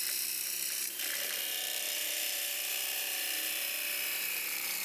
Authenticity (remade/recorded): remade